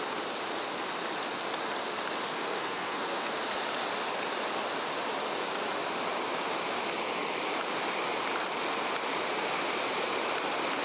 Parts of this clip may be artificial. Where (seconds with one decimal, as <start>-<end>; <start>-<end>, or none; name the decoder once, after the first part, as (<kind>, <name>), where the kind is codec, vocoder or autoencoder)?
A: 2.3-3.3 (codec, SNAC)